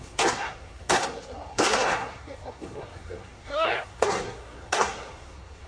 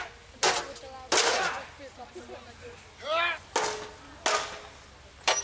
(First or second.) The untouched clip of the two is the second